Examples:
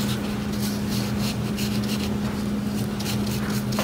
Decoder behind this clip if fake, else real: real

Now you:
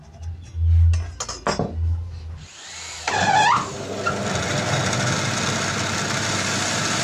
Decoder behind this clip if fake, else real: real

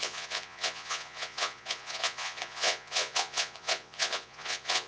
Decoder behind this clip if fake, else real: fake, vocoder, Vocos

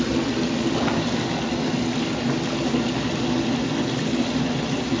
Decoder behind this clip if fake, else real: real